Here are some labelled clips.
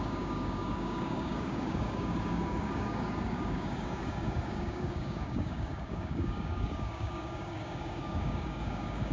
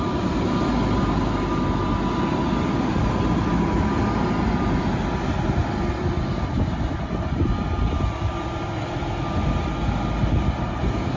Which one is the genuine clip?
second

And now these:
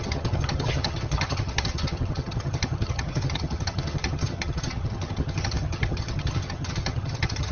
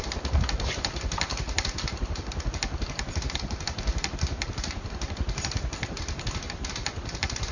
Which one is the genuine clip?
second